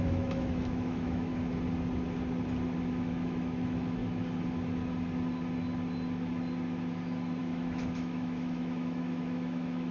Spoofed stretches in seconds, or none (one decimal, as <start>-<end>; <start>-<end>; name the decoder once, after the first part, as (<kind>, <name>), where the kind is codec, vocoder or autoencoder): 0.0-1.3 (autoencoder, DAC-VAE); 2.9-4.0; 7.4-9.9